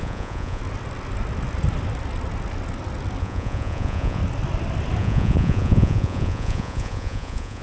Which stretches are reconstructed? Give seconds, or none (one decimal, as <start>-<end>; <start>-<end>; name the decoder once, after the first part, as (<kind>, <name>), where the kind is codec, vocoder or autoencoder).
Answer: 0.0-0.6 (vocoder, Vocos); 3.2-4.2; 5.0-7.6